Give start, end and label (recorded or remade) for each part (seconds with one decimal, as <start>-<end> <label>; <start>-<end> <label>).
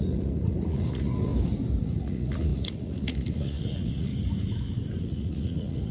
0.0-1.3 remade; 1.3-1.8 recorded; 1.8-4.1 remade; 4.1-5.0 recorded; 5.0-5.9 remade